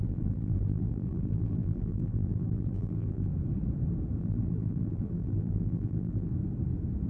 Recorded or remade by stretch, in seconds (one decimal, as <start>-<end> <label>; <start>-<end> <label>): 0.0-3.3 remade; 3.3-4.2 recorded; 4.2-6.3 remade; 6.3-7.1 recorded